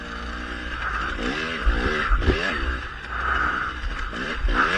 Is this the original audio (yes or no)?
yes